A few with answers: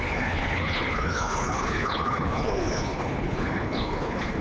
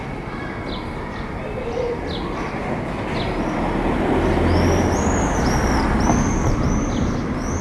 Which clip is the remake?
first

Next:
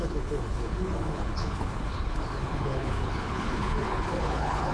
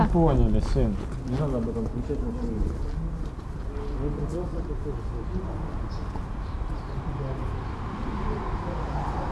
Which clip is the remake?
first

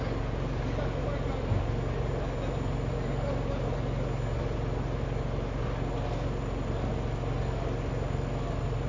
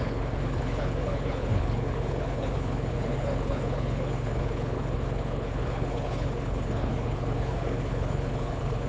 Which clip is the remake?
second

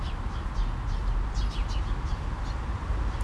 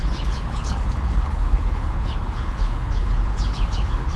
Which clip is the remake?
second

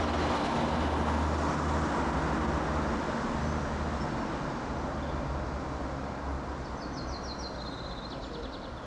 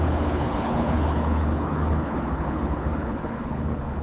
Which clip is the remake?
second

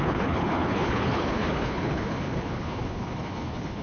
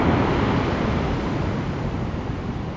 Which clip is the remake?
first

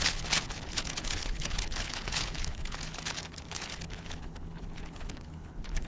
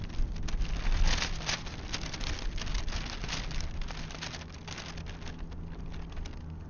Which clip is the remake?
first